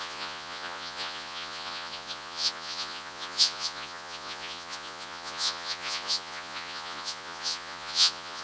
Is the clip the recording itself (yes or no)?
no